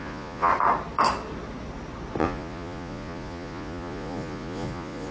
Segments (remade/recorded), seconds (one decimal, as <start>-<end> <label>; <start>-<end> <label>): 0.0-0.5 remade; 0.5-2.2 recorded; 2.2-5.1 remade